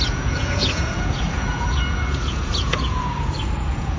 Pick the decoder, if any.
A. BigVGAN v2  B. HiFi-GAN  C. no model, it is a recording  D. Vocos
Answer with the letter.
D